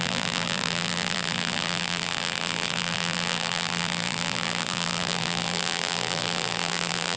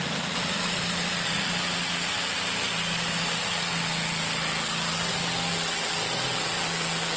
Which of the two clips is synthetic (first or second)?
first